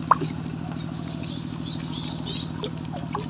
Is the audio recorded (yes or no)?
yes